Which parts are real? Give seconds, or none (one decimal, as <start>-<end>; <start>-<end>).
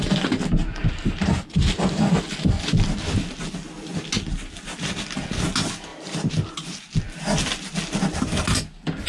0.0-0.8; 2.0-5.9; 6.8-9.1